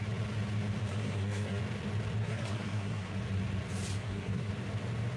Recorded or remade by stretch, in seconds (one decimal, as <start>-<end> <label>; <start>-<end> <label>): 0.0-0.9 recorded; 0.9-1.6 remade; 1.6-2.2 recorded; 2.2-3.1 remade; 3.1-4.0 recorded; 4.0-4.5 remade; 4.5-5.2 recorded